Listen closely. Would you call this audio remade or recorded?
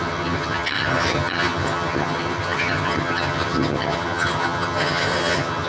remade